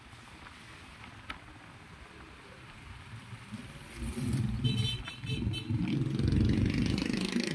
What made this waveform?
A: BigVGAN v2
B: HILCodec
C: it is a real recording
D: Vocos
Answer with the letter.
C